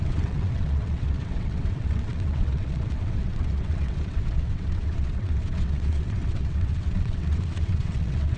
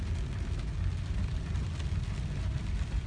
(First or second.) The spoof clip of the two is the first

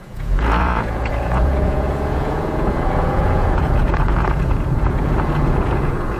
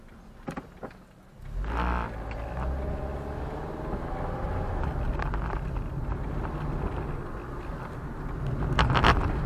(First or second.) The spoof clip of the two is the first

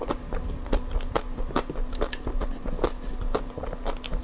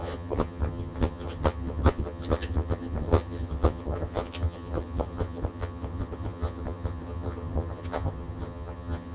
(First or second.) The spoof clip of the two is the second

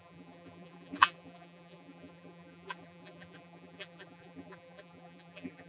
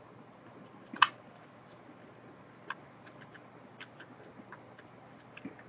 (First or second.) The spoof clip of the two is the first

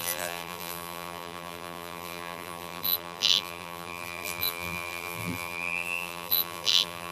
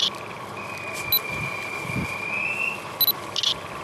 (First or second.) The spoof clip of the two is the first